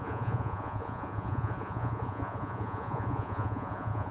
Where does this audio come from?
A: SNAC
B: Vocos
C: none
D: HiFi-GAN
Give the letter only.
B